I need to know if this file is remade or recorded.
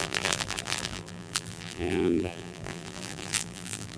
remade